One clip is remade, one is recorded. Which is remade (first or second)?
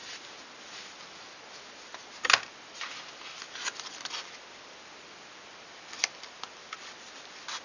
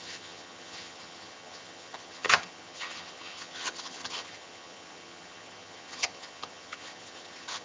second